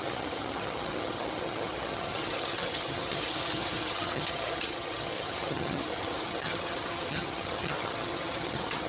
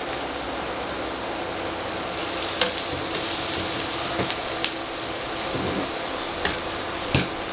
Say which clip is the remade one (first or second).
first